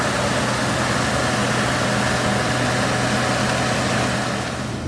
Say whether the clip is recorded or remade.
recorded